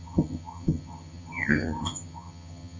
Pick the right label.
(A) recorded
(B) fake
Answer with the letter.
B